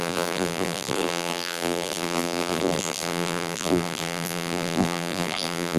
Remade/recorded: remade